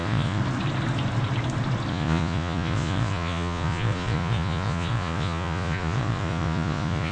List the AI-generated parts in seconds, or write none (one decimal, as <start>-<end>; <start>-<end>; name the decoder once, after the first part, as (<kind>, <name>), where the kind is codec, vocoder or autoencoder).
0.0-0.4 (vocoder, Vocos); 1.9-7.1